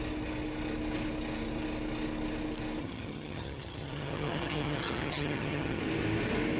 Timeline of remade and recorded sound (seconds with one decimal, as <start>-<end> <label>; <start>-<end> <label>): 0.0-2.8 recorded; 2.8-5.8 remade; 5.8-6.6 recorded